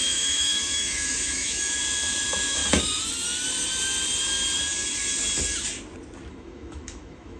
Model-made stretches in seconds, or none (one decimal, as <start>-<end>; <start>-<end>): 0.0-2.6; 6.3-7.4